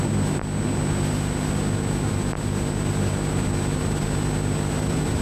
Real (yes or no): yes